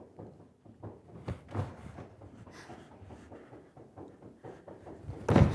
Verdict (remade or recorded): recorded